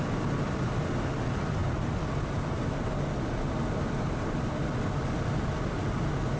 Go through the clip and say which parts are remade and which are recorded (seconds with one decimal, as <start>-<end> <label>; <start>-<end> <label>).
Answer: 0.0-6.4 recorded